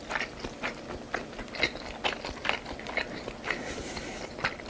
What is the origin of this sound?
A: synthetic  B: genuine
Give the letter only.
B